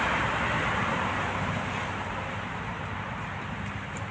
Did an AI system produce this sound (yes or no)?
no